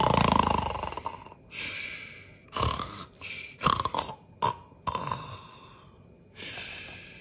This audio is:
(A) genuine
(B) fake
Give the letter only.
A